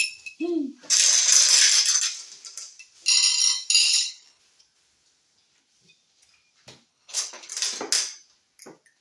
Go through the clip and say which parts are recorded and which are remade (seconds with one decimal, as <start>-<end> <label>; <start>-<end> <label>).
0.0-3.8 recorded; 3.8-4.4 remade; 4.4-6.9 recorded; 6.9-7.5 remade; 7.5-9.0 recorded